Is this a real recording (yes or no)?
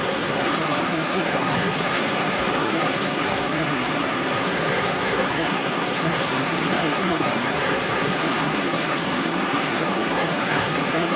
no